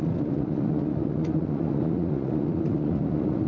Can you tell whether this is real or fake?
fake